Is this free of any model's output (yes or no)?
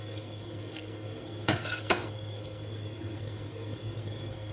no